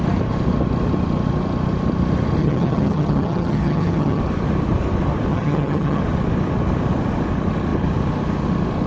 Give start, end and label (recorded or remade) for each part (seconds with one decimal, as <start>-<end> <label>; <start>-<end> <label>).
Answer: 0.0-2.4 recorded; 2.4-4.2 remade; 4.2-5.3 recorded; 5.3-6.0 remade; 6.0-8.9 recorded

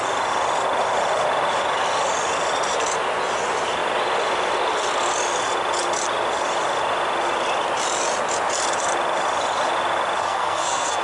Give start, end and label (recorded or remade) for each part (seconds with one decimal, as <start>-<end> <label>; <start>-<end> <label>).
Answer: 0.0-10.2 recorded; 10.2-11.0 remade

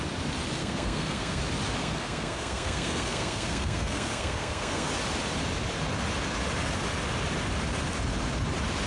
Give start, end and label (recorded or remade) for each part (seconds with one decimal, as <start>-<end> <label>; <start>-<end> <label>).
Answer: 0.0-0.6 recorded; 0.6-1.4 remade; 1.4-1.8 recorded; 1.8-4.9 remade; 4.9-8.9 recorded

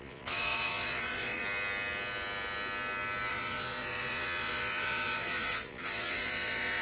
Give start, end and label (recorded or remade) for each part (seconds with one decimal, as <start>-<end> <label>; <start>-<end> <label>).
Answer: 0.0-1.4 remade; 1.4-3.3 recorded; 3.3-6.8 remade